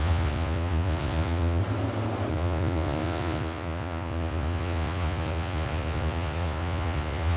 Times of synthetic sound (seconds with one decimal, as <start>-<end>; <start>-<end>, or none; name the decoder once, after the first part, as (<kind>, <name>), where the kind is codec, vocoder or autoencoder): 0.0-1.6 (vocoder, Vocos); 2.3-7.4